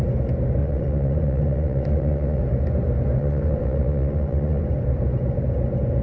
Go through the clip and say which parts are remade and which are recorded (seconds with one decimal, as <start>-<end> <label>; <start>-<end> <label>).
0.0-0.6 recorded; 0.6-2.4 remade; 2.4-3.2 recorded; 3.2-4.6 remade; 4.6-6.0 recorded